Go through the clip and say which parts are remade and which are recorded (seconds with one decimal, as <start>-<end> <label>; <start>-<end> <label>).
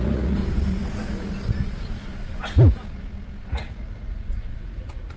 0.0-0.4 remade; 0.4-3.5 recorded; 3.5-5.2 remade